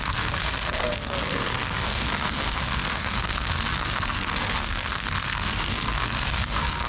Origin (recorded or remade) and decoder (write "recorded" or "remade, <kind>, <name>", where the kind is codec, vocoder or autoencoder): remade, codec, SNAC